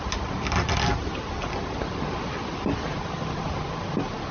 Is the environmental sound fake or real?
real